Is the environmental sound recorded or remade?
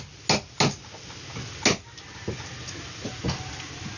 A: recorded